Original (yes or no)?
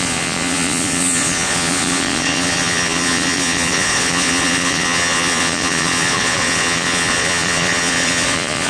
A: no